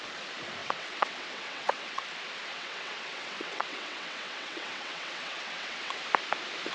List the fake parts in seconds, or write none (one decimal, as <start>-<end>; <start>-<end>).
0.6-2.0; 2.5-6.0